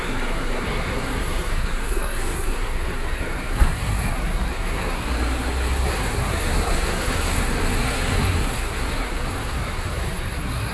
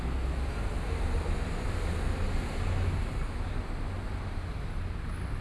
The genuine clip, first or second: second